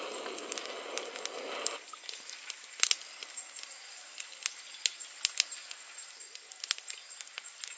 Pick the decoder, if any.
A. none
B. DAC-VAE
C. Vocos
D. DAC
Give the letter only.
A